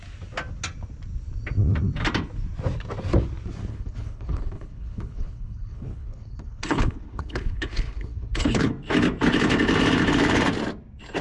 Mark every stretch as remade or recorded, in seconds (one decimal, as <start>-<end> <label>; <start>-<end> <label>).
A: 0.0-3.7 recorded; 3.7-8.7 remade; 8.7-11.2 recorded